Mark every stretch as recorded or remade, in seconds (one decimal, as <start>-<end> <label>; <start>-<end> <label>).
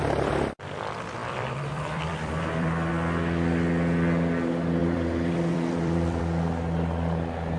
0.0-1.2 recorded; 1.2-2.9 remade; 2.9-4.8 recorded; 4.8-6.2 remade; 6.2-7.6 recorded